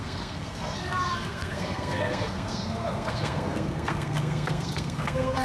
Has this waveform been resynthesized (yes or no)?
yes